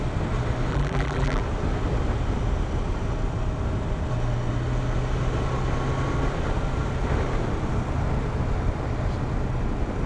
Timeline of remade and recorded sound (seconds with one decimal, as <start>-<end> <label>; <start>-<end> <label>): 0.0-0.7 recorded; 0.7-1.4 remade; 1.4-10.1 recorded